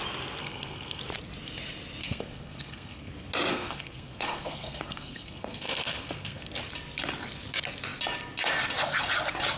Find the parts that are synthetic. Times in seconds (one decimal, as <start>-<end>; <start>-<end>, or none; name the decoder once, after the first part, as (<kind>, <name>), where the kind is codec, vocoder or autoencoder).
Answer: 0.4-1.0 (codec, SNAC); 2.0-3.1; 3.5-6.4